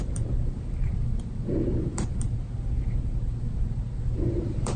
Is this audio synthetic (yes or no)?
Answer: yes